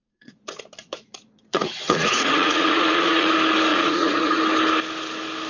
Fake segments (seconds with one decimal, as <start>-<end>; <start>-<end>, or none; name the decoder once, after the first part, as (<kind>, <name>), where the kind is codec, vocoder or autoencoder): 0.0-3.3 (vocoder, Vocos); 3.7-4.4